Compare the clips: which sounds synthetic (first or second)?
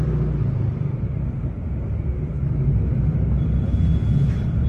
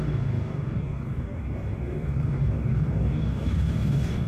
second